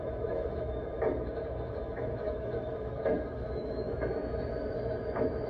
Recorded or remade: remade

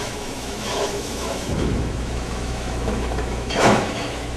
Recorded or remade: remade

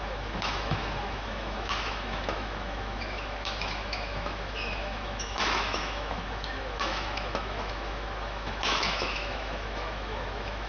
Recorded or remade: remade